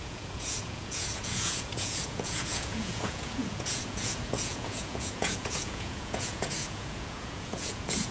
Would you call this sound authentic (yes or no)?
no